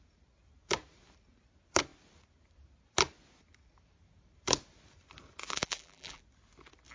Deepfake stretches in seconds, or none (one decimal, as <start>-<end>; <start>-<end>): 5.4-6.2